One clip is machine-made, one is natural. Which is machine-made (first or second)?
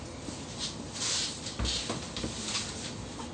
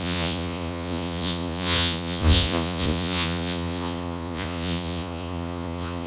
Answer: second